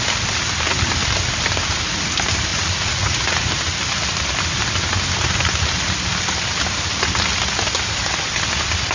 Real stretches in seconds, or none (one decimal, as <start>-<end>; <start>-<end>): 0.0-2.5; 3.5-8.9